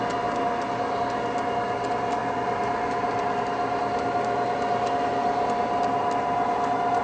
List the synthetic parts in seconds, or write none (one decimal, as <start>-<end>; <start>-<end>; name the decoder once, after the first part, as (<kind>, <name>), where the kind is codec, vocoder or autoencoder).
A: none